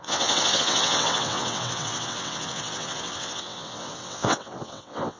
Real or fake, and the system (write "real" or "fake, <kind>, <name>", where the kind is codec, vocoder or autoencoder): fake, vocoder, WaveNeXt